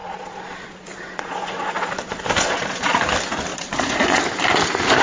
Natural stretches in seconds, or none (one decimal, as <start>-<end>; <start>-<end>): 3.0-3.5; 4.2-5.0